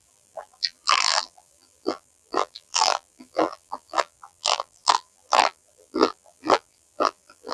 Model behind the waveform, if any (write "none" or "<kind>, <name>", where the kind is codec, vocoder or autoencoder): vocoder, BigVGAN v2